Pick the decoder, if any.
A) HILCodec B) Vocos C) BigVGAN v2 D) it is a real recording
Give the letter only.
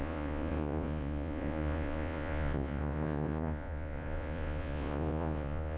B